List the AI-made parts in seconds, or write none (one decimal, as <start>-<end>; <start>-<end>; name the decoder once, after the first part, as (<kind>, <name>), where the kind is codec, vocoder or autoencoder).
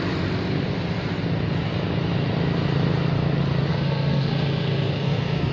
3.7-5.5 (codec, SNAC)